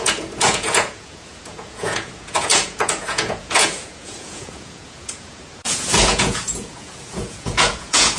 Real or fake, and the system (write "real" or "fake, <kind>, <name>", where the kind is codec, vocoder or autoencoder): fake, vocoder, Vocos